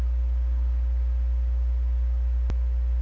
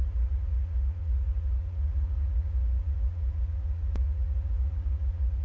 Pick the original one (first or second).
first